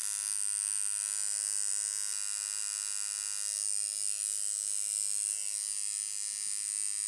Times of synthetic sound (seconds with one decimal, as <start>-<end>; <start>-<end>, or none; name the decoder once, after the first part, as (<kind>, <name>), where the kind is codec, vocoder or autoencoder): none